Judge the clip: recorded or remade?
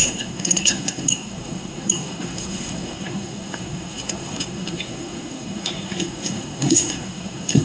remade